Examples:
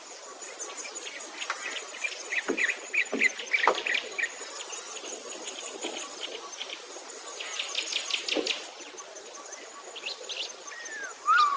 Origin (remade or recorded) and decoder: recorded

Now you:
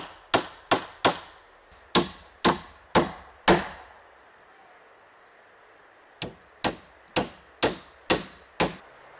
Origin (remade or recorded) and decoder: recorded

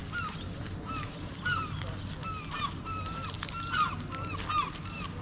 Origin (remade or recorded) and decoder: recorded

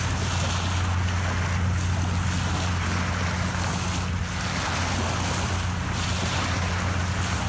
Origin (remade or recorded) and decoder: recorded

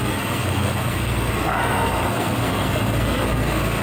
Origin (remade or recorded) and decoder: remade, codec, SNAC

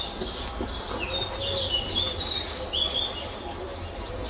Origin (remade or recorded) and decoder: recorded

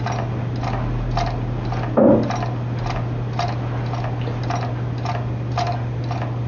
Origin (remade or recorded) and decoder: recorded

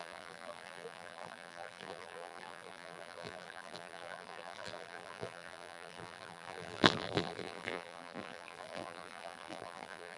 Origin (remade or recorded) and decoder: remade, vocoder, BigVGAN v2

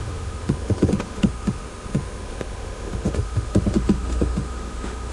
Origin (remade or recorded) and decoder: remade, autoencoder, DAC-VAE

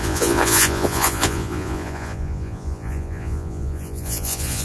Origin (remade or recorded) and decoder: remade, vocoder, Vocos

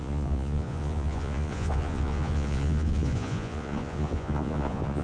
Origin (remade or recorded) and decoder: remade, vocoder, Vocos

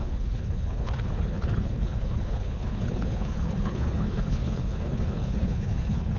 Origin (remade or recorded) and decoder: remade, codec, HILCodec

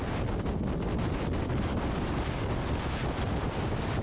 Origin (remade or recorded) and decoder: recorded